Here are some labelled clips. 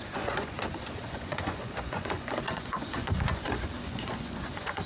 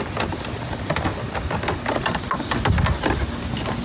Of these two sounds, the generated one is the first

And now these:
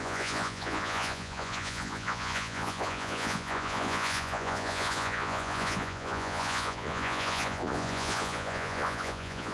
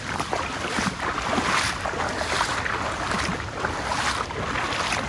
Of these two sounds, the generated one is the first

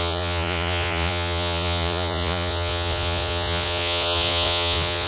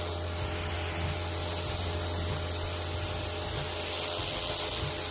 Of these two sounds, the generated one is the first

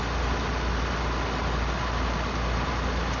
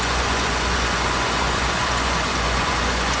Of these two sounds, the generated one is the second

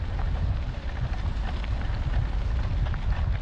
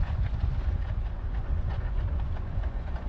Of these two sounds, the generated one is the second